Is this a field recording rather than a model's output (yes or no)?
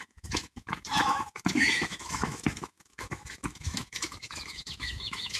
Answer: no